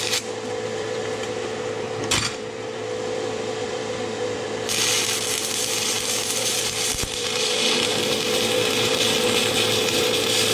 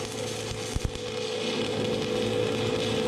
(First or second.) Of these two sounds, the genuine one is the second